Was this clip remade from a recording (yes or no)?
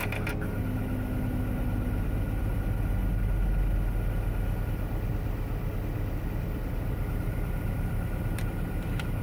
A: no